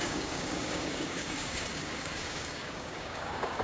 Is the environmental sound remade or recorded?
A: remade